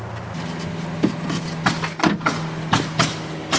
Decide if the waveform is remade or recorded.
recorded